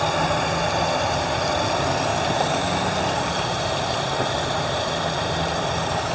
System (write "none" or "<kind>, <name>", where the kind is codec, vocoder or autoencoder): none